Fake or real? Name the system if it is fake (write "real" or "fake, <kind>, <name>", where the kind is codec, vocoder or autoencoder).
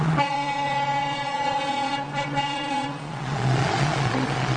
fake, vocoder, Vocos